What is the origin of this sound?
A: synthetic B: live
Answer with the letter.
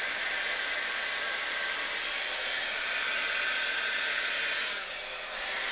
B